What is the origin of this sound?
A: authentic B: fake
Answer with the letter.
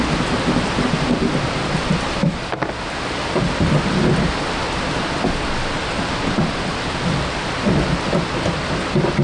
A